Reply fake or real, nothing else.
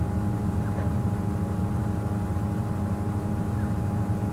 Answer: real